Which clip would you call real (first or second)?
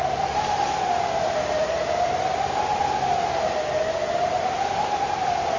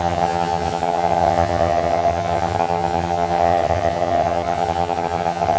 first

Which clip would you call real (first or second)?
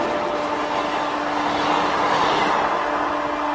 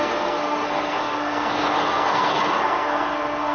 first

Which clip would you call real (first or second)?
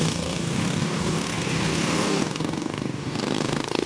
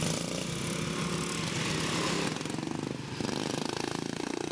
second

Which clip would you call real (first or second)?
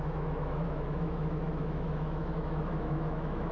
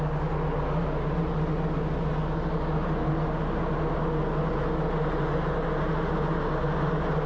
second